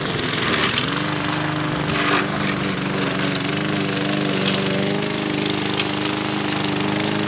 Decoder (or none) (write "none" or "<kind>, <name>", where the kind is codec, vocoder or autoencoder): none